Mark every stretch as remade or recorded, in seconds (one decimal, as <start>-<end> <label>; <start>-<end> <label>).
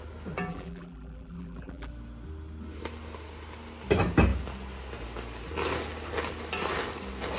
0.0-0.5 recorded; 0.5-1.9 remade; 1.9-7.4 recorded